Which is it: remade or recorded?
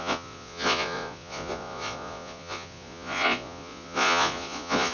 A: remade